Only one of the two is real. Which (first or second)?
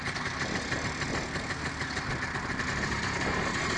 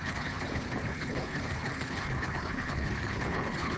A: first